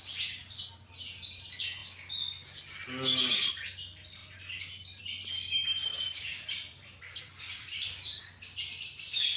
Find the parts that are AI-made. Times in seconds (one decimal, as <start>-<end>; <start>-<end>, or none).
5.6-8.2